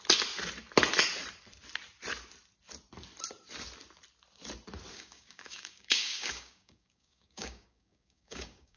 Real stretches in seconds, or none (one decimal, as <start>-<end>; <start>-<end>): 0.0-4.9